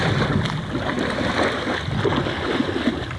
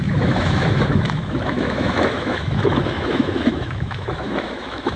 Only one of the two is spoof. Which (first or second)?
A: second